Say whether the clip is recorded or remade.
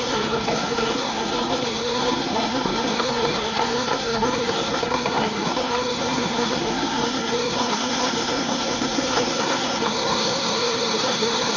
remade